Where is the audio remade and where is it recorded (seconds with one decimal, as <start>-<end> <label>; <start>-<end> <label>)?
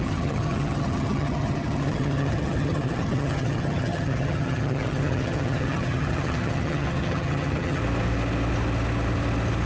0.0-7.8 remade; 7.8-9.7 recorded